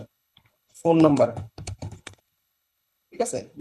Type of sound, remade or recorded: remade